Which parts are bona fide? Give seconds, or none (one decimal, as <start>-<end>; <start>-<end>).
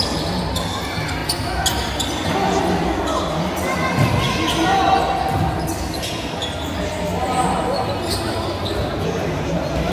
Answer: 0.0-9.9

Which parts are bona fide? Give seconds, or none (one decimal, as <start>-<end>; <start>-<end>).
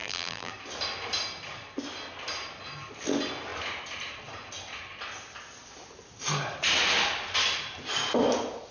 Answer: 0.5-8.7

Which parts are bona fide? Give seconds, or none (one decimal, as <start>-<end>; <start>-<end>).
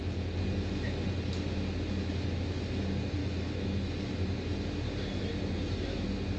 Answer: 0.0-3.2; 3.9-6.4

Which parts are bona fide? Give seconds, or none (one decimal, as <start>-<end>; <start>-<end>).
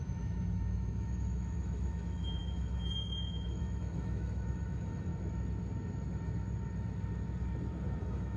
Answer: 5.1-8.0